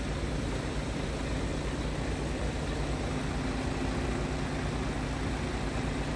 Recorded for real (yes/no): yes